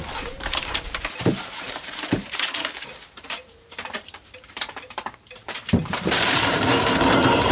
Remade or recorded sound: remade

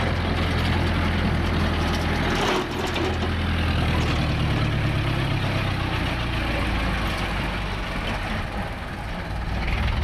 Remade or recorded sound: recorded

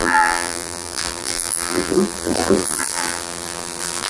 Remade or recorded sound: remade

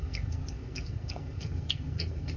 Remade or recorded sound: remade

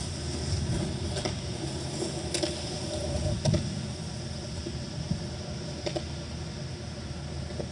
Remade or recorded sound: recorded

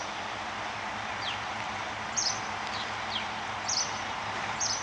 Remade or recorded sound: remade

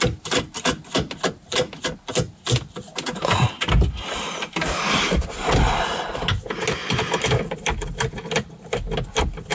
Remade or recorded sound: recorded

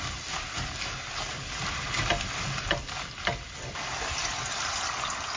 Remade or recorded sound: recorded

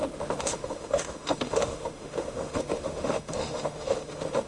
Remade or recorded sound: remade